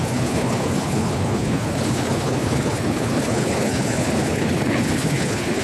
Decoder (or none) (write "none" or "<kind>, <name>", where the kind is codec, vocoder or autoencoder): codec, HILCodec